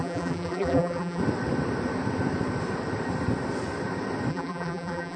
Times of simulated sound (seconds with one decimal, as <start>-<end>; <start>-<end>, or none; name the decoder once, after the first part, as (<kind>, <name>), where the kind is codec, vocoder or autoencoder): 0.0-1.2 (vocoder, BigVGAN v2); 4.3-5.2